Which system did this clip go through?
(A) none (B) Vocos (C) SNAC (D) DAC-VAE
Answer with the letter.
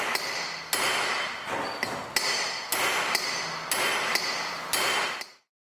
A